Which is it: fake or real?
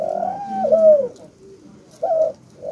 real